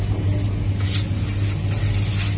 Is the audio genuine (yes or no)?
yes